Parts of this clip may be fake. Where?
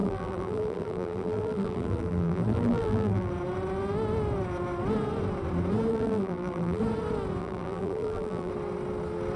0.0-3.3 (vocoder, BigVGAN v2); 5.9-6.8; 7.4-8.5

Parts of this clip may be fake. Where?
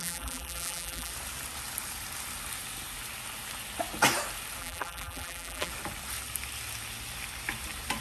0.0-1.1 (vocoder, BigVGAN v2); 4.6-5.7